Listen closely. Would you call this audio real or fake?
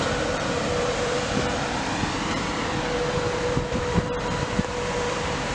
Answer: fake